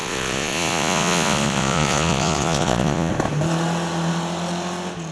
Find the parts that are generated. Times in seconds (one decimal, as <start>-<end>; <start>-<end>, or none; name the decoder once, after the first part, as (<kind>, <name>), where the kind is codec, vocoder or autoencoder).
0.0-3.1 (vocoder, Vocos)